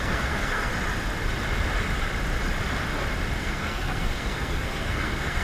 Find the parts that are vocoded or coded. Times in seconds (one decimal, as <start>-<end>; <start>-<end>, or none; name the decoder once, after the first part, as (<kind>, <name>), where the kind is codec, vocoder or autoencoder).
0.0-0.7 (codec, SNAC); 3.4-5.4